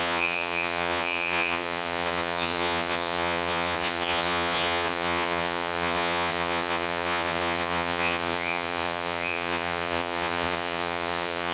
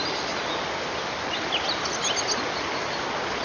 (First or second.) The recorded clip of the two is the second